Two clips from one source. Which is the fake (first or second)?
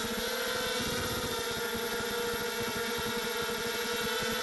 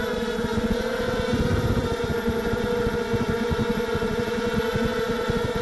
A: second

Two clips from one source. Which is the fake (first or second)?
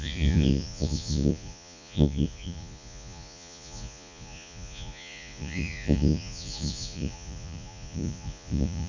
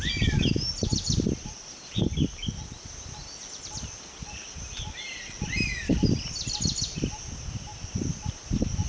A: first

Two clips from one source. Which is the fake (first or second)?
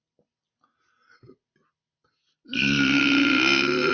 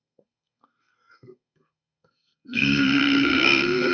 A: second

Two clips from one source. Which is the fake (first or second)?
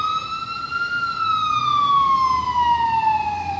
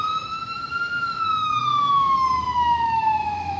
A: second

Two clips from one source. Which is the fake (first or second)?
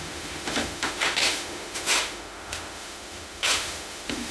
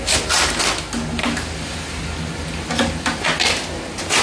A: first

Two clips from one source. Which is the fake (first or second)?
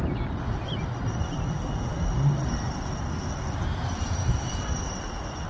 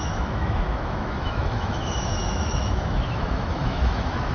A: second